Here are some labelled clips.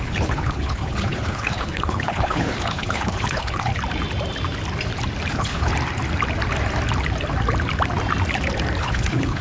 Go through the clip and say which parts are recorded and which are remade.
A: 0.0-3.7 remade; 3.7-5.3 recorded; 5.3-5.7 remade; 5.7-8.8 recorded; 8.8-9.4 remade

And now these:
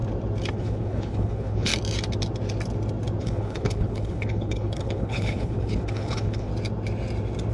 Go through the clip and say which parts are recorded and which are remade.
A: 0.0-0.5 recorded; 0.5-1.7 remade; 1.7-3.2 recorded; 3.2-6.5 remade; 6.5-7.5 recorded

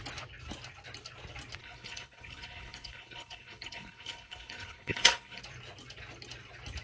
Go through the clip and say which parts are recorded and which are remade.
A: 0.0-1.6 recorded; 1.6-5.4 remade; 5.4-6.8 recorded

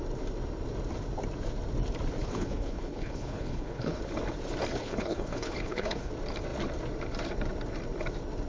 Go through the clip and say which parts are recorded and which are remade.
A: 0.0-2.2 recorded; 2.2-4.0 remade; 4.0-4.8 recorded; 4.8-6.1 remade; 6.1-8.5 recorded